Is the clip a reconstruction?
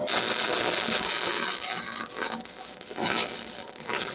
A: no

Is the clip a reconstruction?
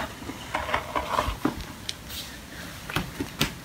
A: no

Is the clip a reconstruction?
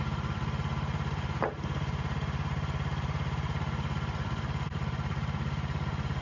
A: yes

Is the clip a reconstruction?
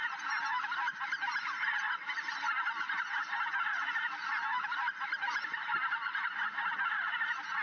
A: no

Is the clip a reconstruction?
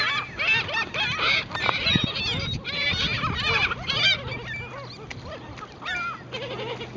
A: no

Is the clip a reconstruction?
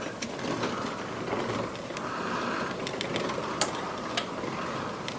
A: no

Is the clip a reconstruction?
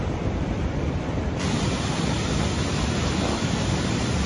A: no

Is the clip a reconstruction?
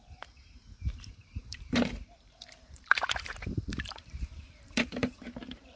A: yes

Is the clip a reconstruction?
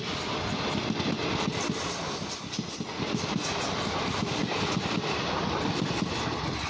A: no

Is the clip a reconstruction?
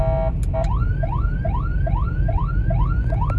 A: no